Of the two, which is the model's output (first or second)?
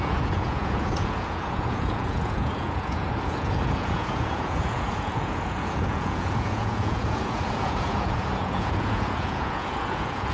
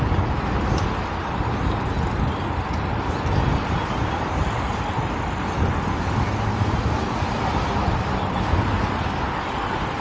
first